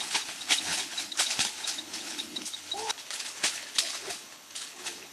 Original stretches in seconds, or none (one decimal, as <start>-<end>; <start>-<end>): none